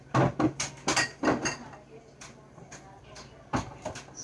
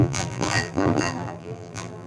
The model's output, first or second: second